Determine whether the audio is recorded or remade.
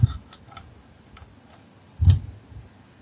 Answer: recorded